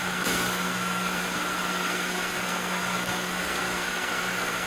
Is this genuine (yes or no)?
no